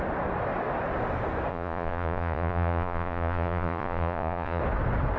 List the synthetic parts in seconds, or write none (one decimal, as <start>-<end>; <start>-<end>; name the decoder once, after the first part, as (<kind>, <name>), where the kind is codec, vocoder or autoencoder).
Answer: 1.5-4.6 (vocoder, Vocos)